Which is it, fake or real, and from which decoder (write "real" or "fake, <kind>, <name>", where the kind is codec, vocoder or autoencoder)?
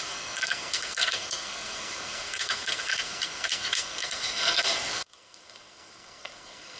fake, codec, SNAC